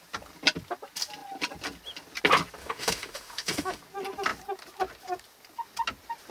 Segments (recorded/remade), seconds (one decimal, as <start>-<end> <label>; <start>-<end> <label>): 0.0-2.6 recorded; 2.6-3.8 remade; 3.8-6.3 recorded